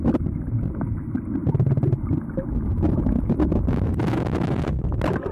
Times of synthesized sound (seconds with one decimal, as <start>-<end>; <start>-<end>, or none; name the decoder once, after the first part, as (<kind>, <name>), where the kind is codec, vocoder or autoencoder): none